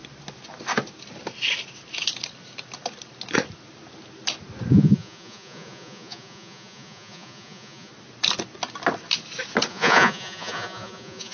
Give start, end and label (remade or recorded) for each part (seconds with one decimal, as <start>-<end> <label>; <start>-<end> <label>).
0.0-4.7 recorded; 4.7-7.9 remade; 7.9-9.7 recorded; 9.7-11.3 remade